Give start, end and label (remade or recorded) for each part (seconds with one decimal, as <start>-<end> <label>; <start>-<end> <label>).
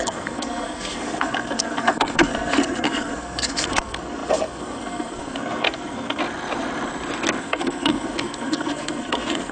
0.0-6.2 remade; 6.2-7.4 recorded; 7.4-9.5 remade